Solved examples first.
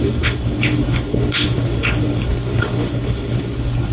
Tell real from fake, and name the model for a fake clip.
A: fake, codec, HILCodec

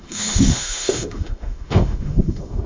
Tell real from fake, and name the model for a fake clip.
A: fake, autoencoder, DAC-VAE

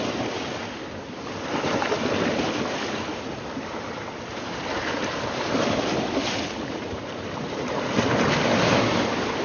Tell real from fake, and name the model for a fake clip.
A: real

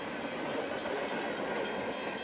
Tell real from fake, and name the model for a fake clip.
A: real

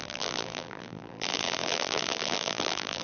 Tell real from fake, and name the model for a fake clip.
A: fake, vocoder, BigVGAN v2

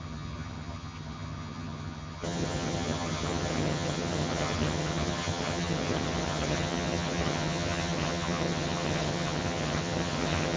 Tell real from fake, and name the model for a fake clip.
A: fake, vocoder, HiFi-GAN